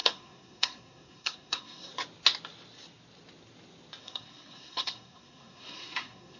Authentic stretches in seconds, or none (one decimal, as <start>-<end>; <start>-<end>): 1.9-4.0